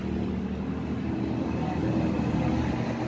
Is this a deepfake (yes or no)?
no